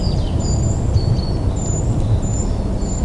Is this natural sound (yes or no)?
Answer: yes